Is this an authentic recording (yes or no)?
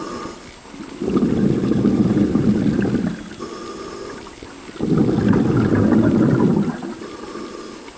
yes